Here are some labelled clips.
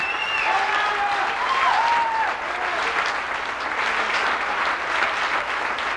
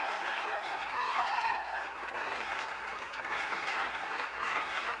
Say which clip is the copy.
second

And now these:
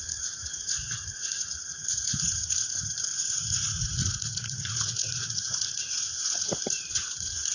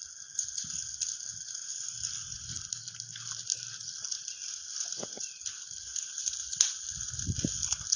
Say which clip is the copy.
first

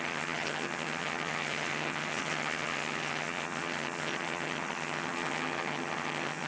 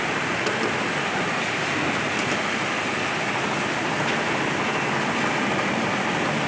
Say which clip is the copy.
first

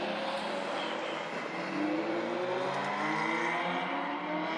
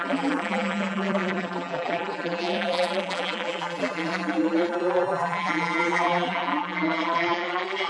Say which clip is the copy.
second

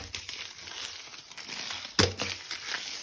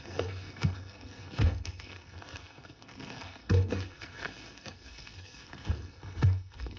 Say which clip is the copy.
second